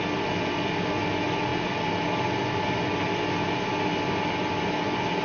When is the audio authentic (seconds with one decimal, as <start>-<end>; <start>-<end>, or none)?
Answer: 0.0-5.2

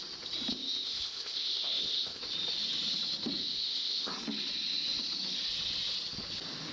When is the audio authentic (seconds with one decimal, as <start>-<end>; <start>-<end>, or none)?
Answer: 0.0-0.5; 2.2-3.4; 4.1-6.7

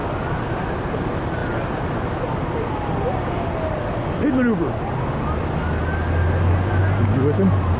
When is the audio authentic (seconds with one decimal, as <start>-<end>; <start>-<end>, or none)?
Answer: 0.0-7.8

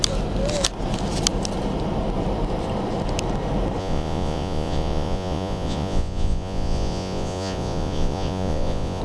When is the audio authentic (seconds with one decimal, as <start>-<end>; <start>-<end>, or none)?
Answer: 0.0-3.8

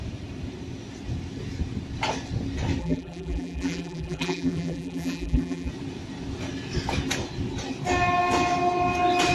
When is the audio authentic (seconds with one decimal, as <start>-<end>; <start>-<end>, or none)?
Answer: 0.0-2.8; 5.7-9.3

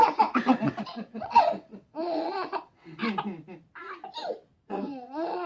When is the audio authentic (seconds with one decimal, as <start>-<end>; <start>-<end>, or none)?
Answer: 3.0-4.7

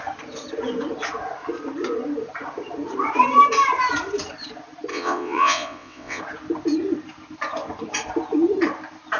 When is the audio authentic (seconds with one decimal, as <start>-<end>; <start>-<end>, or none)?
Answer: 0.0-4.9; 6.2-9.2

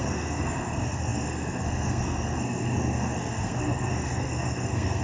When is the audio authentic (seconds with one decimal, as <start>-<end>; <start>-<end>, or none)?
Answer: none